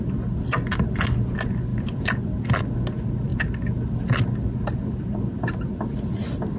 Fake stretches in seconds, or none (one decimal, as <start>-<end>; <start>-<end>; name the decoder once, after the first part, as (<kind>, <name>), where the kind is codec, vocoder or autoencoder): none